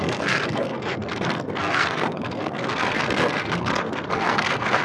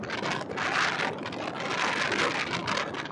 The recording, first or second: second